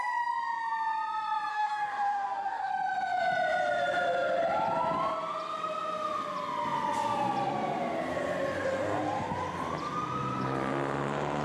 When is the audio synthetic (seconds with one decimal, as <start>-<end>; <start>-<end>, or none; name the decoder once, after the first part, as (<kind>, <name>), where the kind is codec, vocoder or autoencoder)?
1.5-2.7 (codec, DAC)